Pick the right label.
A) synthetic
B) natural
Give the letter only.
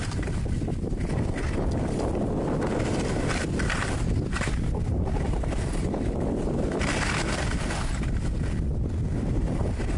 B